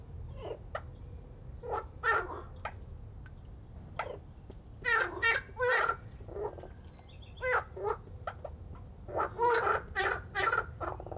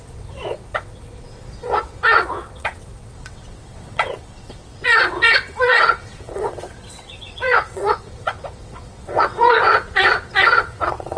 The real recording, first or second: first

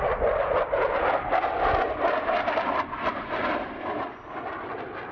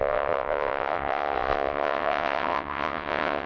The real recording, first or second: first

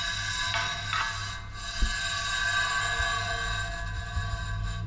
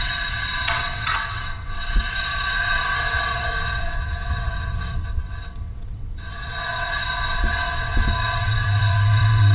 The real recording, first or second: first